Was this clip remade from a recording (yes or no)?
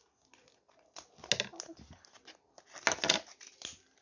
no